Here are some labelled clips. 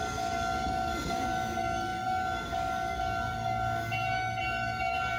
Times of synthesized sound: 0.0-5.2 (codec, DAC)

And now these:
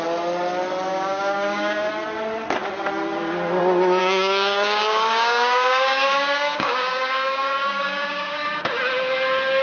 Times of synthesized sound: 0.9-1.9 (codec, DAC); 4.0-8.8

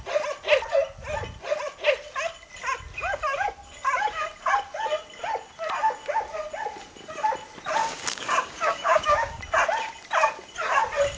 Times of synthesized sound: 7.8-9.4 (codec, DAC)

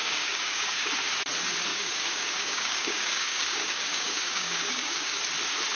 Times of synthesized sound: 0.0-0.9 (codec, DAC); 1.7-5.2